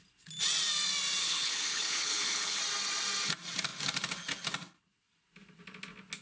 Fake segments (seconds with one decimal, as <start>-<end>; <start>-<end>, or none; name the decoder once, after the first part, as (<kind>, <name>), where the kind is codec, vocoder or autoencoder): 1.2-2.6 (codec, HILCodec)